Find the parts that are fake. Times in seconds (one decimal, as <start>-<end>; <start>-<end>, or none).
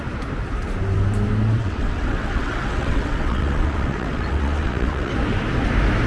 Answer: 1.6-5.1